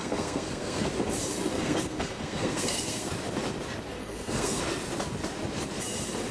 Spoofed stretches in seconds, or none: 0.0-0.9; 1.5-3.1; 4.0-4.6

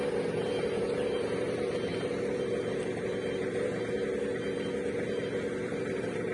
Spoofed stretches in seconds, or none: none

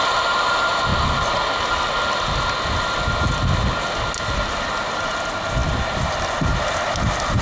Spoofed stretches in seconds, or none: none